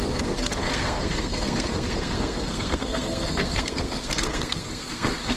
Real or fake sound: fake